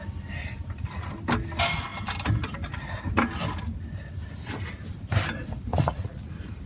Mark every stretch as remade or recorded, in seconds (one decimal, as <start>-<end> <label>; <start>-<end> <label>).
0.0-5.7 recorded; 5.7-6.3 remade; 6.3-6.7 recorded